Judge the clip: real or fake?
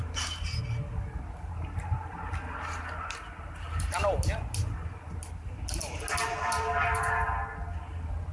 real